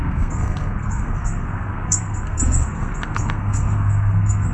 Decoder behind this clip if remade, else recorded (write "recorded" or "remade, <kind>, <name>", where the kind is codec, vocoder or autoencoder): remade, codec, SNAC